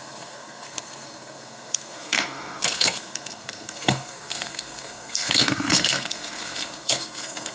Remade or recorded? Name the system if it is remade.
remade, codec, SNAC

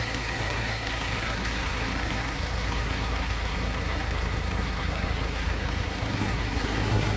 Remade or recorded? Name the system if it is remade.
remade, codec, SNAC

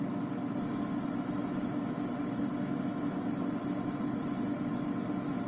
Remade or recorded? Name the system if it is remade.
recorded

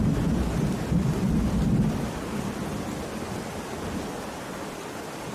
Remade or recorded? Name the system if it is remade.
recorded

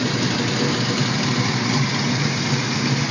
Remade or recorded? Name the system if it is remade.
recorded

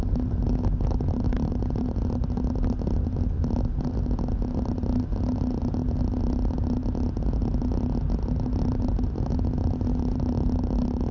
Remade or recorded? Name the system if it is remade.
recorded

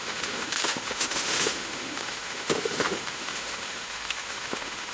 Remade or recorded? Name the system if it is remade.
remade, autoencoder, DAC-VAE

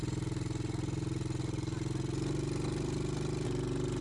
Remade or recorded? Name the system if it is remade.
recorded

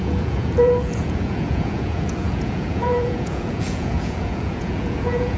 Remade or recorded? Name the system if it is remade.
remade, vocoder, Vocos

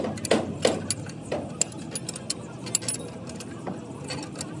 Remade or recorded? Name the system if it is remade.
recorded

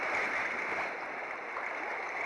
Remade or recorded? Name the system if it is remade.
recorded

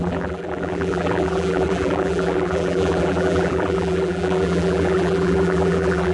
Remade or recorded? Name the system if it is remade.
remade, vocoder, BigVGAN v2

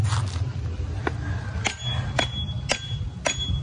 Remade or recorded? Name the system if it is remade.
recorded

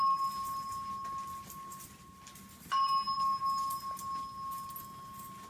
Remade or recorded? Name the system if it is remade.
recorded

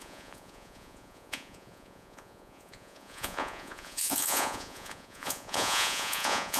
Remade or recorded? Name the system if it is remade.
remade, vocoder, Vocos